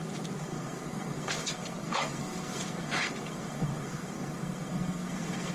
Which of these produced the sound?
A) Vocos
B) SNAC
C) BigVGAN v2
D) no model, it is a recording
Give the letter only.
B